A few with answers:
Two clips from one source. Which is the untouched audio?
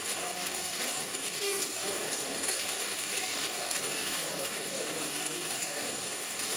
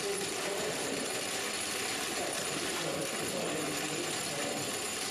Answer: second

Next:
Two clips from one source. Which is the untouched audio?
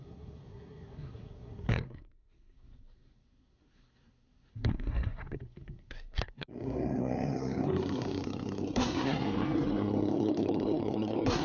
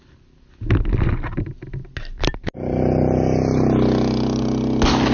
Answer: second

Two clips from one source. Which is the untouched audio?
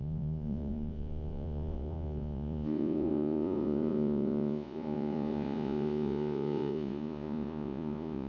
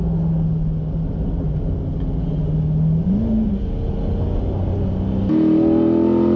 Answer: second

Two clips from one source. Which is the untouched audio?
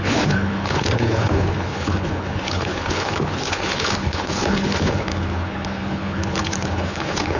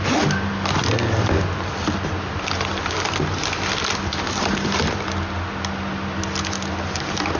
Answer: second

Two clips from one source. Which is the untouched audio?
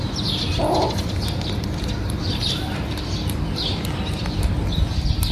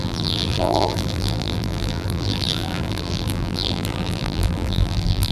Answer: first